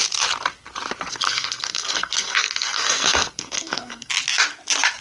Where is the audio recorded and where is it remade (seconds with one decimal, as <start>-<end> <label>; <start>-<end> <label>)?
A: 0.0-1.1 recorded; 1.1-4.1 remade; 4.1-5.0 recorded